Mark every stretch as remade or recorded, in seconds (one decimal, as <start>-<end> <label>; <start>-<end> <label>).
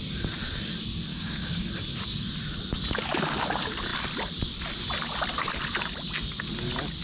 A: 0.0-1.1 recorded; 1.1-1.7 remade; 1.7-7.0 recorded